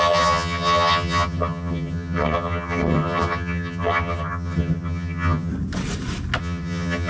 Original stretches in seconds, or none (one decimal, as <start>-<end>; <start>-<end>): 5.5-6.4